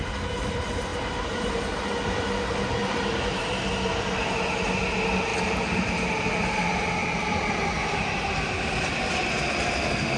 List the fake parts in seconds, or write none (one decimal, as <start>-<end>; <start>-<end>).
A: 0.9-1.8; 2.8-3.4; 5.3-6.0; 7.0-7.5

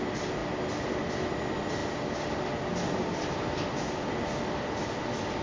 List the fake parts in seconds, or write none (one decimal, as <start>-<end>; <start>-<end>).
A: none